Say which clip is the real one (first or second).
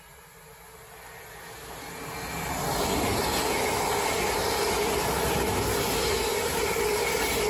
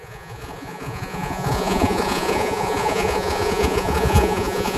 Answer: first